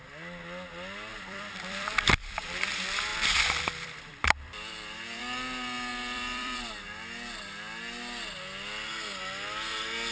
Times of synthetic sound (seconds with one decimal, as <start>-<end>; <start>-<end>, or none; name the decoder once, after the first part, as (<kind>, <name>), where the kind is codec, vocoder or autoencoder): 1.1-2.7 (vocoder, BigVGAN v2); 3.1-5.2; 5.9-6.7